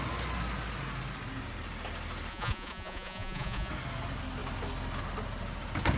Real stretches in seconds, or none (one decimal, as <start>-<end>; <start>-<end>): 0.0-2.3; 3.7-6.0